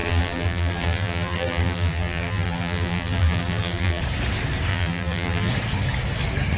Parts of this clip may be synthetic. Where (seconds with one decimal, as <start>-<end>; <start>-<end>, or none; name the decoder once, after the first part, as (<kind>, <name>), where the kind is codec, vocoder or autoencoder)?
0.0-4.0 (vocoder, BigVGAN v2); 4.7-5.5